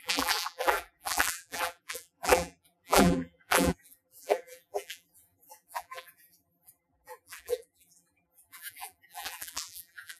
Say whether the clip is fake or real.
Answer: fake